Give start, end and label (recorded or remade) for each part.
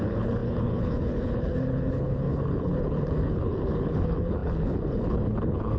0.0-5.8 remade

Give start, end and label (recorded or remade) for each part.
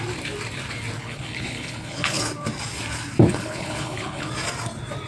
0.0-1.0 recorded; 1.0-2.2 remade; 2.2-3.3 recorded; 3.3-4.3 remade; 4.3-5.1 recorded